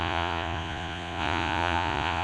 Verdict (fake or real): fake